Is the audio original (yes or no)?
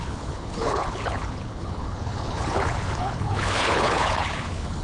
no